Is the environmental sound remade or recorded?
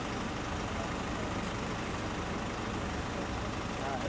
recorded